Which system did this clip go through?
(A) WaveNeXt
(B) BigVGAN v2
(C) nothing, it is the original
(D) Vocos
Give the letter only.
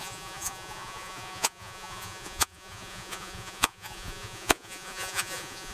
D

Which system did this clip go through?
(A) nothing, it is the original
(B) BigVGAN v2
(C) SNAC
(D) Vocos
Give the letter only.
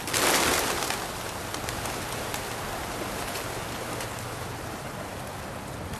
A